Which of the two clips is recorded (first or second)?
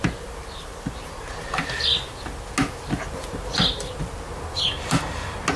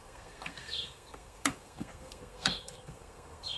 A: first